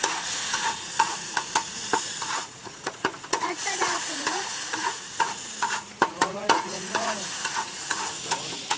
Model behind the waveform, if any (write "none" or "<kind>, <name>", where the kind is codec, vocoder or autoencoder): vocoder, Vocos